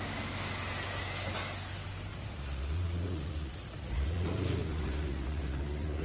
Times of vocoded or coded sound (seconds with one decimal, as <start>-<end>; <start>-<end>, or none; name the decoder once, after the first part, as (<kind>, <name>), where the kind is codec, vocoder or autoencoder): 2.1-6.0 (vocoder, Vocos)